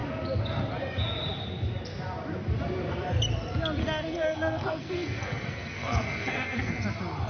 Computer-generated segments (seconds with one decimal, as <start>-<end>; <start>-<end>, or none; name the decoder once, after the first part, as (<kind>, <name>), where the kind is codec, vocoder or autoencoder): 3.8-6.7 (codec, SNAC)